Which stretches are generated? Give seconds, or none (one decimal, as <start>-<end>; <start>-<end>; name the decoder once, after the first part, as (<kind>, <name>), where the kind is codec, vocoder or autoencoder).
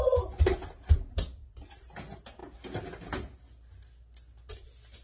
none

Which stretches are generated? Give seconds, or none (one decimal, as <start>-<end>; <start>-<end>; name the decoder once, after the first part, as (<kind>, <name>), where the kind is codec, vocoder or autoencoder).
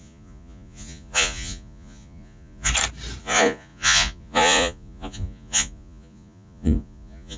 0.0-2.7 (vocoder, Vocos); 3.2-7.4